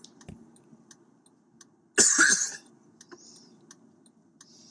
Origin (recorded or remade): recorded